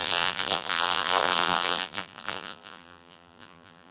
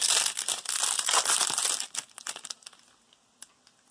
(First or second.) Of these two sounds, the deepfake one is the first